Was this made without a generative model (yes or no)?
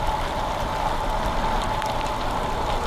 yes